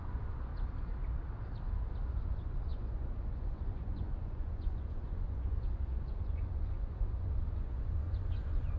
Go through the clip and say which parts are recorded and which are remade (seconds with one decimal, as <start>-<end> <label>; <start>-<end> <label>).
0.0-0.5 remade; 0.5-2.0 recorded; 2.0-8.8 remade